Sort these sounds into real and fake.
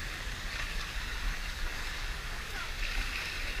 fake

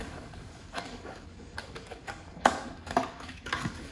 fake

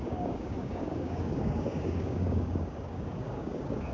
fake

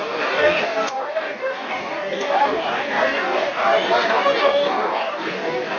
fake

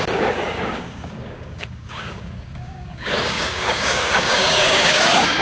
fake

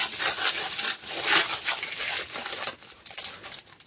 real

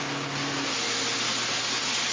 real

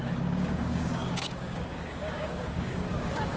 fake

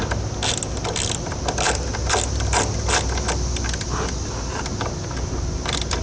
real